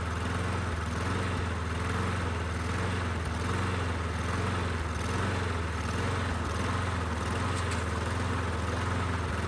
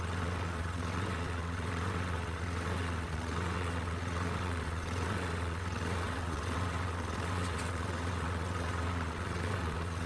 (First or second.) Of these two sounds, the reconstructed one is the second